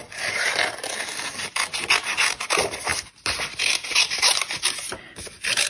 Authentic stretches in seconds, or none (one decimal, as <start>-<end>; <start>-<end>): 0.0-5.7